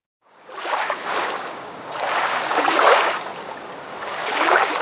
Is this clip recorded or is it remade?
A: remade